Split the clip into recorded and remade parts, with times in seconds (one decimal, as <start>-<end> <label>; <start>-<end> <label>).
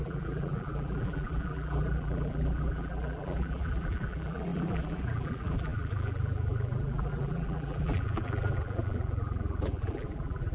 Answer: 0.0-10.5 remade